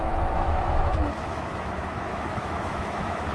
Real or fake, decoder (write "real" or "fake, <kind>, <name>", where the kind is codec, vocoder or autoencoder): fake, autoencoder, DAC-VAE